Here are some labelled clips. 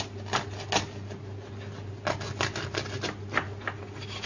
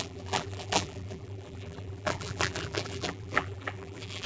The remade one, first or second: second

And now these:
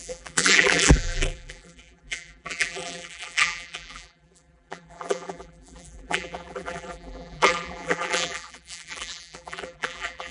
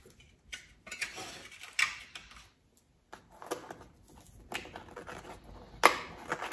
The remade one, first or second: first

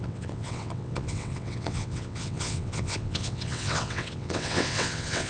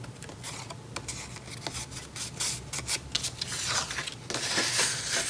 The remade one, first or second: first